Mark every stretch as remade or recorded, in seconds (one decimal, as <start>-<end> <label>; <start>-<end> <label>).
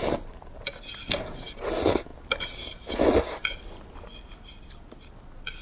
0.0-5.6 recorded